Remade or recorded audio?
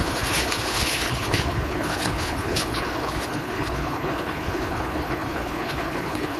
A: remade